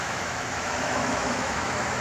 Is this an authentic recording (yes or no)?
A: no